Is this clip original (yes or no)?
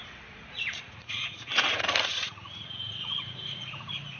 no